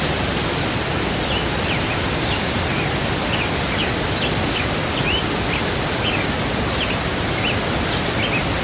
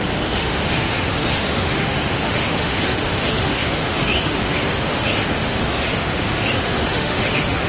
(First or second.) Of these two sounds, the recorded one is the first